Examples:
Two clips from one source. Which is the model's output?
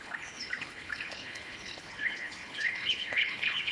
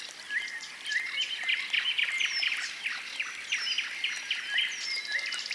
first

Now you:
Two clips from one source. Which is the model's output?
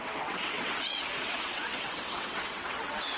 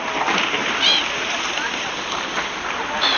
first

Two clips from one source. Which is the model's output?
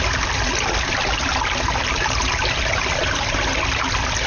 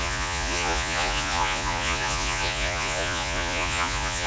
second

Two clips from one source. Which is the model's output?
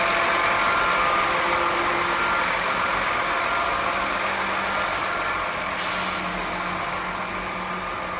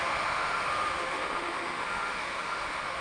second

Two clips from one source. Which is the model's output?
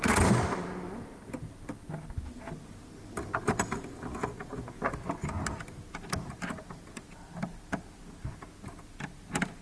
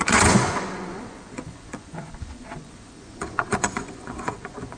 second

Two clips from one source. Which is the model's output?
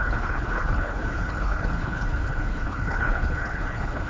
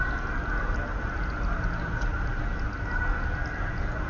first